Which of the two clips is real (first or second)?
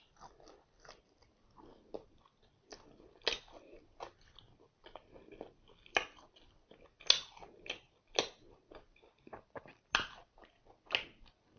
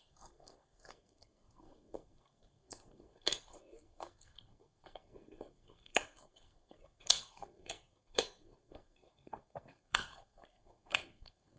first